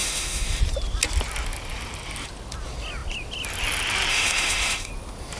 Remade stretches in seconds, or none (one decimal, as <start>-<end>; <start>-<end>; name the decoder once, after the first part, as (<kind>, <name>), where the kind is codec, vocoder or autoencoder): 0.0-0.6 (autoencoder, DAC-VAE); 4.1-4.9